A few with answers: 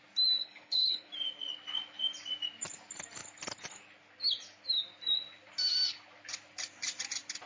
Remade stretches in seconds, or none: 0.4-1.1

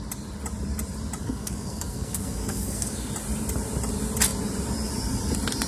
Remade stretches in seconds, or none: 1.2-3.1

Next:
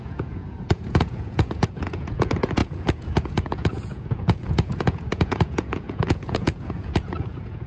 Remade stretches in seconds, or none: 0.0-7.7

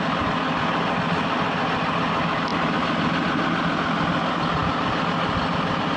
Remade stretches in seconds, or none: none